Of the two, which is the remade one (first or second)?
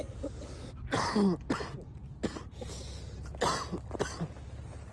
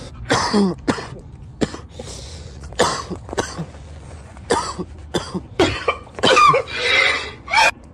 second